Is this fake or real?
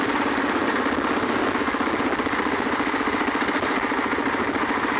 real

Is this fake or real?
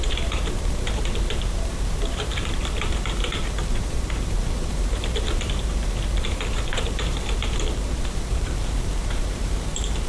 fake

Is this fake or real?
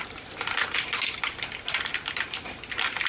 real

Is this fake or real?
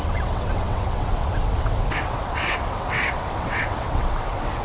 fake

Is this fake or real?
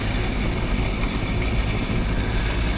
real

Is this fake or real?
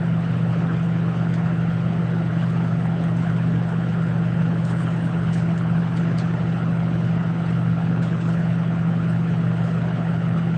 fake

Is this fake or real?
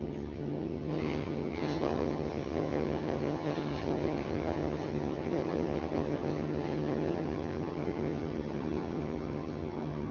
fake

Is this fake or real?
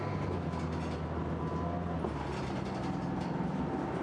real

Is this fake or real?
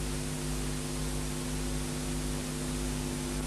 real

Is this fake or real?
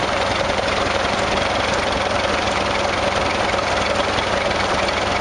real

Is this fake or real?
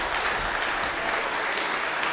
real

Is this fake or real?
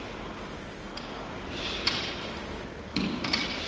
real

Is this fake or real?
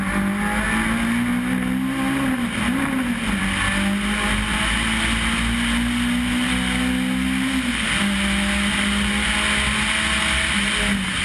real